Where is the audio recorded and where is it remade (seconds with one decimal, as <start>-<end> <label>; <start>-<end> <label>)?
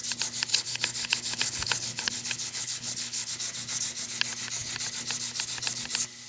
0.0-0.5 recorded; 0.5-3.3 remade; 3.3-6.3 recorded